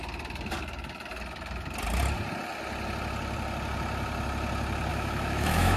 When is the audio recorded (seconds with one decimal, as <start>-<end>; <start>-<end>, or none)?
0.0-4.9